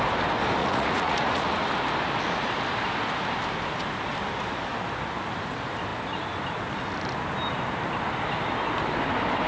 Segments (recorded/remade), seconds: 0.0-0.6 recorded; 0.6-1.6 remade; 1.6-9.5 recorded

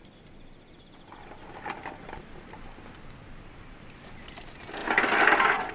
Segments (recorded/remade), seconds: 0.0-3.4 recorded; 3.4-4.8 remade; 4.8-5.7 recorded